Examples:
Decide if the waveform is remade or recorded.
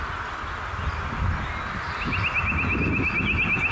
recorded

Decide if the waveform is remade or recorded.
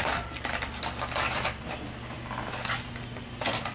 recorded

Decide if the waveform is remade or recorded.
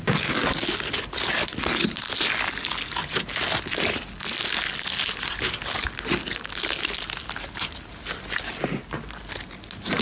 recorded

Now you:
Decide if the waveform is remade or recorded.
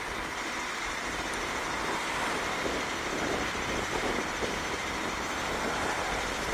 recorded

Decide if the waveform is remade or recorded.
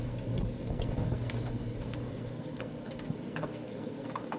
remade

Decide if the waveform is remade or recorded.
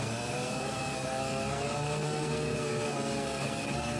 remade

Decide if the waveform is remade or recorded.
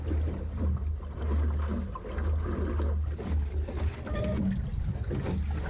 recorded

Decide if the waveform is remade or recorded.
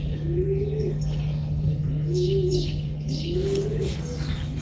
remade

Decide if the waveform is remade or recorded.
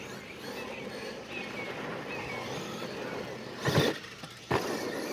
recorded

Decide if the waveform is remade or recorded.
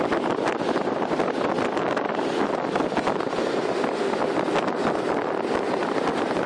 recorded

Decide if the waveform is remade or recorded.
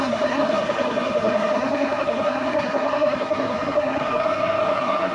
remade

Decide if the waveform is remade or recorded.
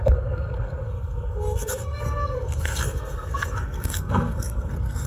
remade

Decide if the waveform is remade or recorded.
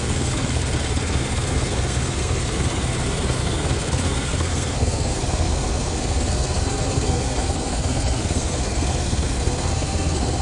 remade